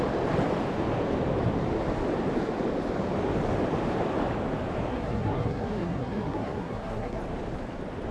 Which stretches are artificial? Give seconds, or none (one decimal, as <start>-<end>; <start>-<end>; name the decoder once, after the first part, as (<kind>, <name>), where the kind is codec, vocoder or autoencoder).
4.9-7.2 (codec, SNAC)

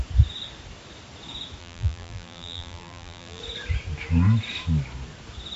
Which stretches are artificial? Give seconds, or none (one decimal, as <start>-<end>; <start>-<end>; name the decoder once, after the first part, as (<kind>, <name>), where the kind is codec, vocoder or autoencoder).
1.6-3.4 (vocoder, BigVGAN v2)

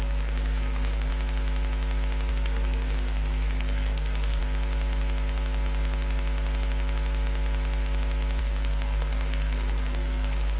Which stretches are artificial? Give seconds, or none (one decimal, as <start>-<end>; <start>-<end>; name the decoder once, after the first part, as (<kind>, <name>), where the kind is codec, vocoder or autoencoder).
0.0-1.1 (codec, SNAC); 2.3-4.4; 8.4-10.6

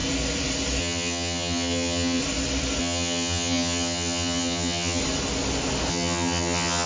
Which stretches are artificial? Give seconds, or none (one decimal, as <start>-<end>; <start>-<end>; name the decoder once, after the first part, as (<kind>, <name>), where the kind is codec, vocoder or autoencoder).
0.8-2.2 (vocoder, HiFi-GAN); 2.8-5.0; 5.9-6.9